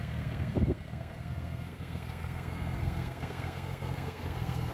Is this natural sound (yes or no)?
no